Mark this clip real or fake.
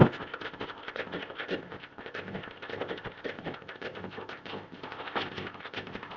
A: fake